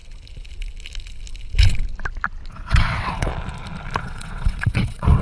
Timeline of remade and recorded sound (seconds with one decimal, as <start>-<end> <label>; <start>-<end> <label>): 0.0-2.5 recorded; 2.5-3.3 remade; 3.3-4.0 recorded; 4.0-5.2 remade